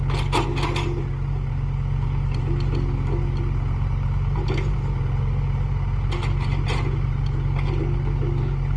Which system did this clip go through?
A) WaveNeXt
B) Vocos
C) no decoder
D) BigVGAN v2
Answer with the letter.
C